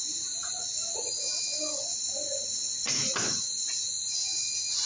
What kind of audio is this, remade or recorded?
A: recorded